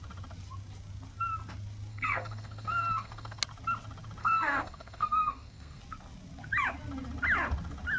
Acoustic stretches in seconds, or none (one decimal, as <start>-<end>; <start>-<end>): 0.0-1.9; 3.4-4.2; 5.8-8.0